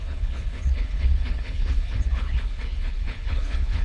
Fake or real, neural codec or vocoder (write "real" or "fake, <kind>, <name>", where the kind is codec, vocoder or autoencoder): fake, codec, HILCodec